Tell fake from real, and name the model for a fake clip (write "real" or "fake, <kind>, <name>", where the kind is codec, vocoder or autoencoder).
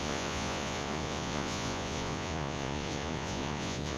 fake, vocoder, Vocos